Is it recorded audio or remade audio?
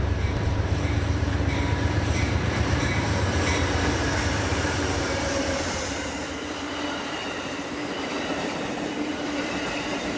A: remade